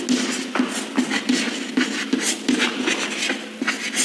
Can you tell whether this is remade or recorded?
recorded